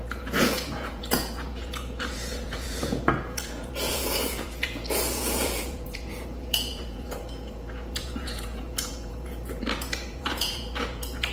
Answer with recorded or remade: remade